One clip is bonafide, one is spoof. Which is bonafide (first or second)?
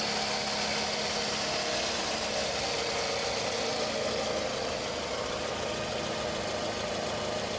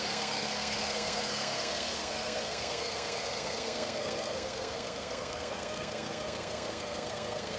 first